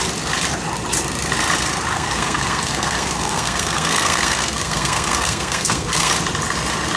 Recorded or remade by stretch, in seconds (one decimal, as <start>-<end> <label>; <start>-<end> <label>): 0.0-1.9 recorded; 1.9-6.1 remade; 6.1-7.0 recorded